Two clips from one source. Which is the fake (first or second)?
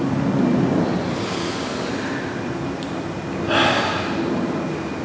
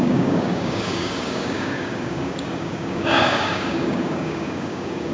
second